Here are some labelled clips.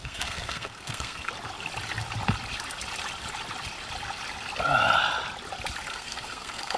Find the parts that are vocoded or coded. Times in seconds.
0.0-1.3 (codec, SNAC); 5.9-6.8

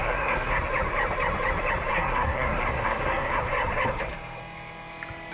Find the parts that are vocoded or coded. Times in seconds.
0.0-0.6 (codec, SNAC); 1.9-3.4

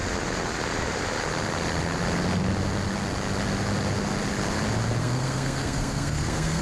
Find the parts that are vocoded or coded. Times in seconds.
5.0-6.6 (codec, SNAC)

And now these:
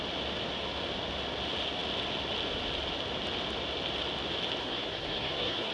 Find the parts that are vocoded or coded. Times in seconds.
4.6-5.7 (codec, SNAC)